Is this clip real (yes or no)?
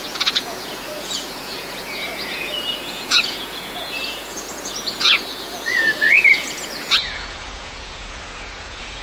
no